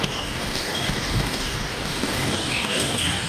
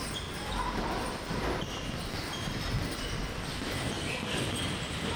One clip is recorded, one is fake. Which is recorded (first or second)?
second